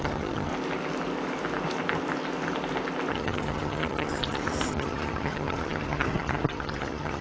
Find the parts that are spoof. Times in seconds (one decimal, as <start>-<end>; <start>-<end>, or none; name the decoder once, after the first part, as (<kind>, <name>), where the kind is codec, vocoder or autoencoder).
0.0-0.5 (vocoder, HiFi-GAN); 3.1-7.2